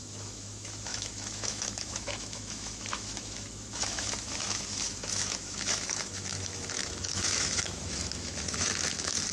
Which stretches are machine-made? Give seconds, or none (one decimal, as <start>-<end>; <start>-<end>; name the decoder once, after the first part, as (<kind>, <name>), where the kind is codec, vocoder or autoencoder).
0.0-9.3 (autoencoder, DAC-VAE)

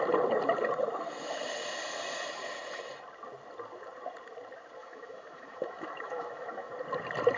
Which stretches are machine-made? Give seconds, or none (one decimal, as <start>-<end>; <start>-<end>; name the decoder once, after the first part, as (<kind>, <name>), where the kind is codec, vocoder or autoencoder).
4.8-6.7 (autoencoder, DAC-VAE)

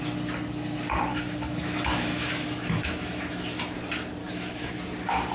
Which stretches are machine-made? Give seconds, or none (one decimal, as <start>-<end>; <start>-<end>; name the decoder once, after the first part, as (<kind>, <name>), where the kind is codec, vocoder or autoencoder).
1.1-3.6 (autoencoder, DAC-VAE); 4.2-4.7

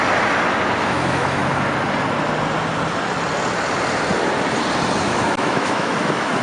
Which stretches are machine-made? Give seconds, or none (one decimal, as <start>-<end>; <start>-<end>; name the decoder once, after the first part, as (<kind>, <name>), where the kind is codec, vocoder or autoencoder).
0.8-1.4 (autoencoder, DAC-VAE); 5.0-6.4